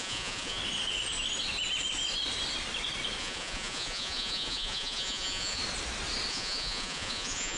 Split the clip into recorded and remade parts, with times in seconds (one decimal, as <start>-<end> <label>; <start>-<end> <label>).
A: 0.0-0.6 remade; 0.6-3.2 recorded; 3.2-5.6 remade; 5.6-6.3 recorded; 6.3-7.6 remade